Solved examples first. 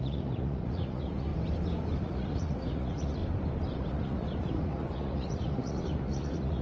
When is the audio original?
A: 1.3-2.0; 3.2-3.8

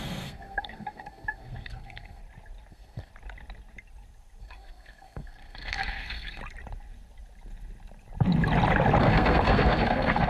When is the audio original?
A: 2.2-2.7; 3.1-4.4; 6.4-9.0

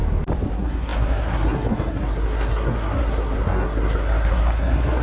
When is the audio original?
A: 0.0-0.5

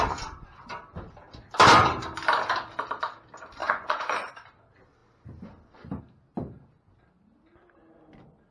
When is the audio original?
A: 0.0-3.6; 4.3-8.5

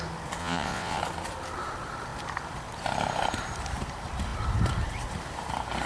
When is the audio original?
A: 0.0-0.4; 1.0-5.9

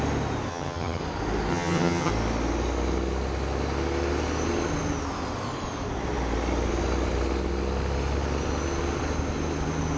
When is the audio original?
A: 0.0-0.5; 1.0-1.5; 2.1-10.0

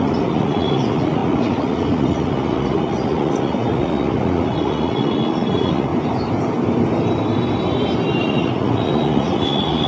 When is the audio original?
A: 5.9-8.2